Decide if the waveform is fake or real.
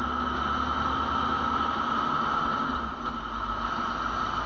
real